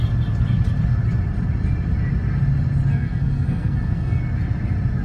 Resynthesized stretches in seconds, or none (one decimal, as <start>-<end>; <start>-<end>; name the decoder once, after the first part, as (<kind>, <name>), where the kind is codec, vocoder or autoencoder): 2.9-4.2 (codec, SNAC)